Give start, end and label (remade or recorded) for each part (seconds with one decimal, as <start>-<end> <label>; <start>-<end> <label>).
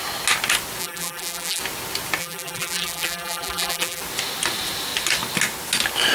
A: 0.0-0.8 recorded; 0.8-1.6 remade; 1.6-2.2 recorded; 2.2-4.0 remade; 4.0-6.1 recorded